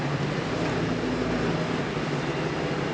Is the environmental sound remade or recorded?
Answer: recorded